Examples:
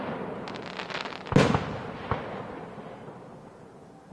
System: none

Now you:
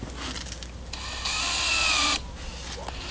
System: none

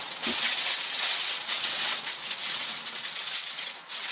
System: vocoder, WaveNeXt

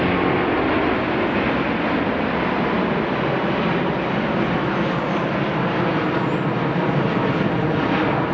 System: none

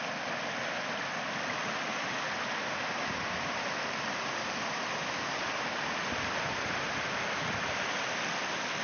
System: none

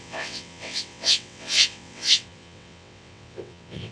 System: vocoder, WaveNeXt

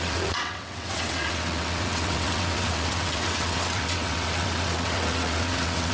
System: vocoder, WaveNeXt